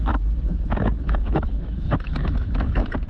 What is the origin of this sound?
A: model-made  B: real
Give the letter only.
A